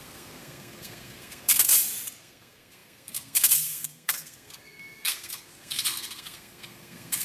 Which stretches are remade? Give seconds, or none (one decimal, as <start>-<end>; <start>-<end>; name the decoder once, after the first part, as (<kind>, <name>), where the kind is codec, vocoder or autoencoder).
0.0-1.7 (codec, SNAC); 2.2-7.2